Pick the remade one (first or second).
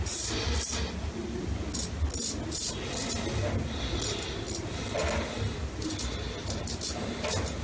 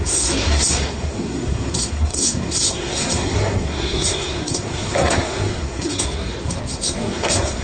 second